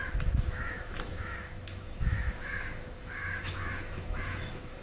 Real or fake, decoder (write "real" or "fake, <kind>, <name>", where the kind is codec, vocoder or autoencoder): fake, autoencoder, DAC-VAE